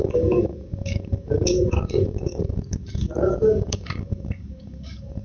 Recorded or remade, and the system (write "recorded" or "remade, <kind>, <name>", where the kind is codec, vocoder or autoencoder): remade, codec, DAC